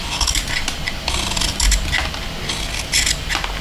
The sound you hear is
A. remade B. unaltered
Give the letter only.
B